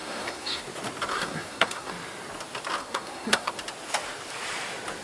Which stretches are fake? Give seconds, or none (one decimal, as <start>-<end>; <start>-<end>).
0.0-0.6; 1.1-1.9; 2.8-3.5